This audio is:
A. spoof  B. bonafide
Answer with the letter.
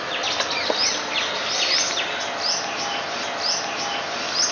B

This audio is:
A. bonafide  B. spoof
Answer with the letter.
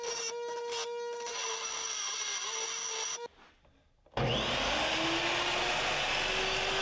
A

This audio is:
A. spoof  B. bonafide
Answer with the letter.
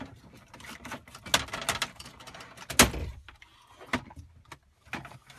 B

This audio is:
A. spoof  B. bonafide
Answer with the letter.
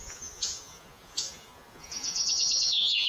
A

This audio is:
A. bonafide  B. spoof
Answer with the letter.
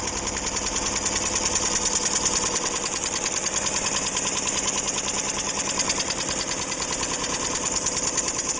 A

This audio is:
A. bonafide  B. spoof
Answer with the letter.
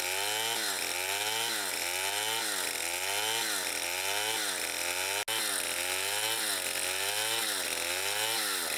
A